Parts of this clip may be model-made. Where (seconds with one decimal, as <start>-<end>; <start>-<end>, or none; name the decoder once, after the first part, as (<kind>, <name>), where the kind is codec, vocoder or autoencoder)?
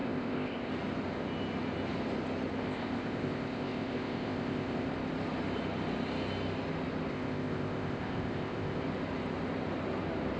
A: 0.0-0.7 (codec, ZipCodec); 2.6-4.9; 7.1-8.8